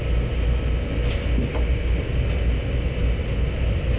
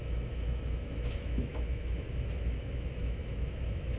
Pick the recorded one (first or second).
first